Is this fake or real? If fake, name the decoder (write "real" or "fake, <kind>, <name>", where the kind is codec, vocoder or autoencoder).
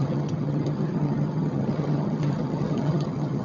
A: fake, vocoder, HiFi-GAN